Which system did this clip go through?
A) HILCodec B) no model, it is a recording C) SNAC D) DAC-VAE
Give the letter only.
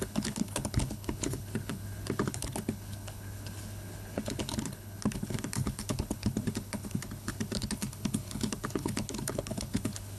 A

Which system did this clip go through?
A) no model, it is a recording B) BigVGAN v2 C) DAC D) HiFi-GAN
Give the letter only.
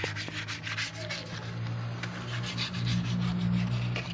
A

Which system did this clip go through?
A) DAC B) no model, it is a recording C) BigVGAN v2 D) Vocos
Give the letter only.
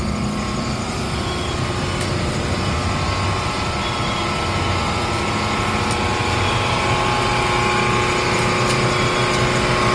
B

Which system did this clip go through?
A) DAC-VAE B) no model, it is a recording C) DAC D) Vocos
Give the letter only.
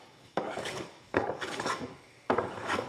C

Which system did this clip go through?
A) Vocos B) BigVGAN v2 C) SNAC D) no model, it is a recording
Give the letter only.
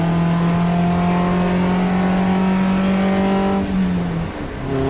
D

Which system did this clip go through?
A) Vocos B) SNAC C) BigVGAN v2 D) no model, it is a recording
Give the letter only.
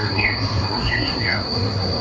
B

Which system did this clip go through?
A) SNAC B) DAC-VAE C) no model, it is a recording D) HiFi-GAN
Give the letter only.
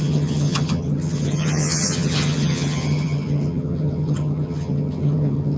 D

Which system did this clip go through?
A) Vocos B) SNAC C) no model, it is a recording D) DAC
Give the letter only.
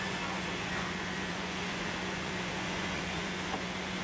A